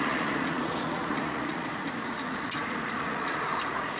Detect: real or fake fake